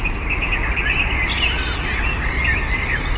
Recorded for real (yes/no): yes